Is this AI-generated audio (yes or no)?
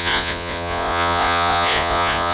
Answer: yes